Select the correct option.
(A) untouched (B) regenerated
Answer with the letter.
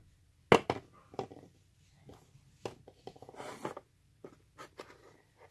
A